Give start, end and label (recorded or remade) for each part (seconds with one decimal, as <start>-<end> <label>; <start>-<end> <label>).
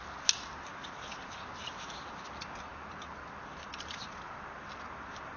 0.0-5.4 recorded